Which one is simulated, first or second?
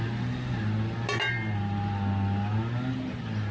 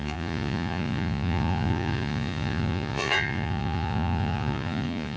second